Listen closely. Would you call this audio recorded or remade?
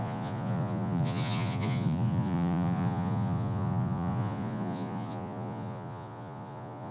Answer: remade